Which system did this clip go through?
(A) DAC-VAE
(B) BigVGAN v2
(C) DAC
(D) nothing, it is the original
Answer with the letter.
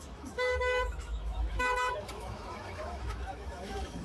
A